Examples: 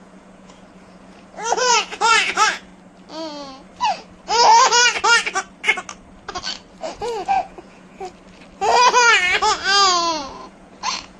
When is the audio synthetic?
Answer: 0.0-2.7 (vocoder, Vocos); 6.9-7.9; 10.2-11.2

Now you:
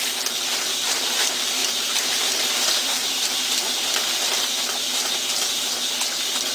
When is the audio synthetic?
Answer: 1.6-3.1 (vocoder, BigVGAN v2)